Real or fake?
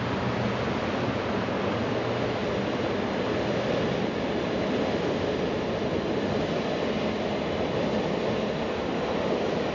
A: real